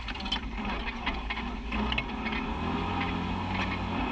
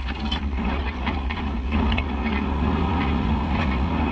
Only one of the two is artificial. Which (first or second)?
second